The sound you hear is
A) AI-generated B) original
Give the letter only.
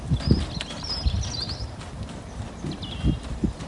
B